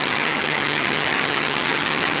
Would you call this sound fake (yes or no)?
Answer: yes